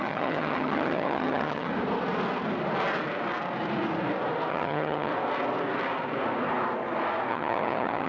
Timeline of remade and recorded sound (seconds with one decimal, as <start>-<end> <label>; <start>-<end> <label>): 0.0-1.7 remade; 1.7-4.5 recorded; 4.5-5.1 remade; 5.1-7.3 recorded; 7.3-8.1 remade

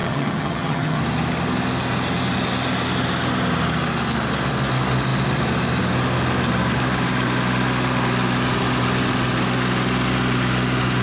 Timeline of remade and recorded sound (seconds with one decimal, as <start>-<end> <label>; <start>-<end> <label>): 0.0-1.0 remade; 1.0-11.0 recorded

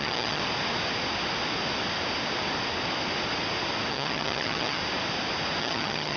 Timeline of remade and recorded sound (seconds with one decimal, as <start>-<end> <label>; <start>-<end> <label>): 0.0-0.4 remade; 0.4-3.9 recorded; 3.9-4.8 remade; 4.8-5.6 recorded; 5.6-6.2 remade

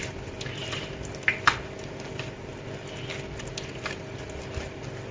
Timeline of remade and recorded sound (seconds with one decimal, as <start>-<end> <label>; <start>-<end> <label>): 0.0-5.1 recorded

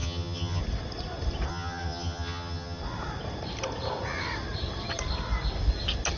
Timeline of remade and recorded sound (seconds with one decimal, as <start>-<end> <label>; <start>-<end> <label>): 0.0-0.6 remade; 0.6-1.5 recorded; 1.5-2.8 remade; 2.8-6.2 recorded

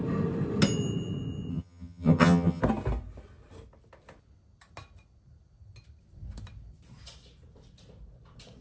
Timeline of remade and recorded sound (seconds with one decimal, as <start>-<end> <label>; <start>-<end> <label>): 0.0-1.5 recorded; 1.5-2.6 remade; 2.6-8.6 recorded